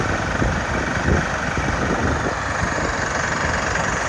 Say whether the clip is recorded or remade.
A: recorded